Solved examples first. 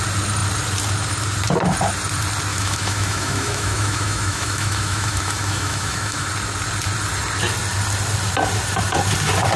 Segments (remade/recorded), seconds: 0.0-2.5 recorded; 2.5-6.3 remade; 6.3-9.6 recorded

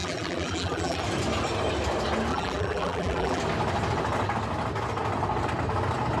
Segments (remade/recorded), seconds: 0.0-1.0 remade; 1.0-2.3 recorded; 2.3-3.4 remade; 3.4-6.2 recorded

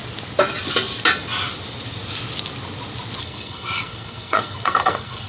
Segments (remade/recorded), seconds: 0.0-3.2 recorded; 3.2-5.3 remade

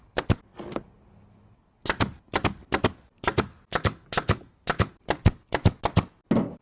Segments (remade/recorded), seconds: 0.0-6.6 recorded

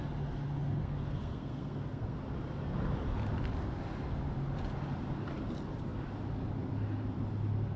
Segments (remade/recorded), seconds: 0.0-0.8 recorded; 0.8-2.2 remade; 2.2-7.8 recorded